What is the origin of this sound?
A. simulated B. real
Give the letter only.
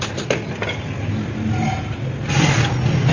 B